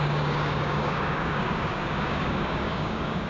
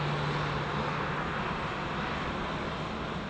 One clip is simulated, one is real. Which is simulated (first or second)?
first